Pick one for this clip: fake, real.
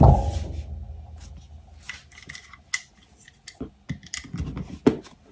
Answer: real